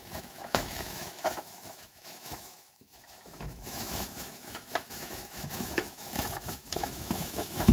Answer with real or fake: fake